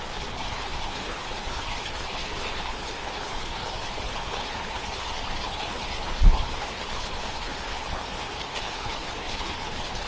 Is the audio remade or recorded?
remade